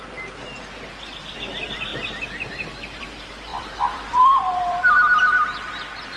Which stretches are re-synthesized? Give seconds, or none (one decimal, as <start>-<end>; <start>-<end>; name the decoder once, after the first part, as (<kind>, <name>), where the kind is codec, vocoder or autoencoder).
3.5-5.7 (vocoder, BigVGAN v2)